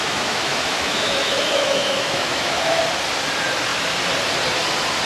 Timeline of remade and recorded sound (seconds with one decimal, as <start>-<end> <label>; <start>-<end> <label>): 0.0-2.8 remade; 2.8-5.1 recorded

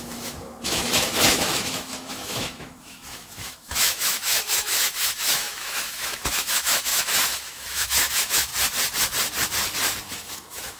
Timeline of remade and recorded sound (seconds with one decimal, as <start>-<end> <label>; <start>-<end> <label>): 0.0-8.5 remade; 8.5-10.1 recorded; 10.1-10.8 remade

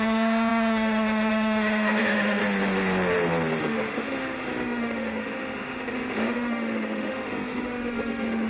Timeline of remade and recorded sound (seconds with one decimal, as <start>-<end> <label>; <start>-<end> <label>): 0.0-2.4 remade; 2.4-3.6 recorded; 3.6-8.5 remade

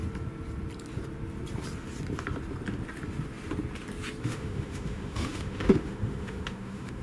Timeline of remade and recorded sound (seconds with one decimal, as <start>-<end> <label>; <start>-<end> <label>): 0.0-4.2 recorded; 4.2-7.0 remade

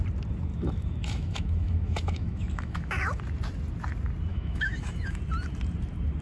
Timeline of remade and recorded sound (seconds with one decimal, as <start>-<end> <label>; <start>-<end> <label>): 0.0-0.5 recorded; 0.5-3.2 remade; 3.2-4.3 recorded; 4.3-5.2 remade; 5.2-6.2 recorded

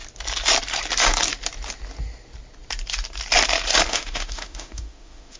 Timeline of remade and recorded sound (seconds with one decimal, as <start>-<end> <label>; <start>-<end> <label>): 0.0-3.9 recorded; 3.9-5.4 remade